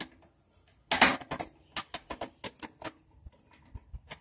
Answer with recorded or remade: recorded